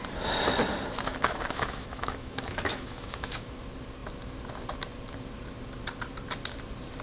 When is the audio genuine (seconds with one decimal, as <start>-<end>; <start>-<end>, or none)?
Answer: 0.0-1.1; 3.6-7.0